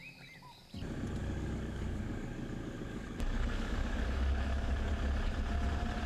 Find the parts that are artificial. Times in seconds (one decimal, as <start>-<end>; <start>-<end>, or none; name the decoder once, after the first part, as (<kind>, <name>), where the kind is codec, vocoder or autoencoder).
1.2-4.9 (codec, DAC)